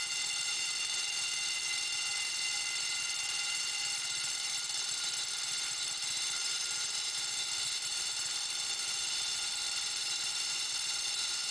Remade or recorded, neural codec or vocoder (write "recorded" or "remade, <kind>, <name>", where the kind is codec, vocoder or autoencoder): recorded